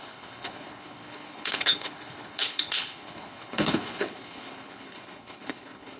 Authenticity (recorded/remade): remade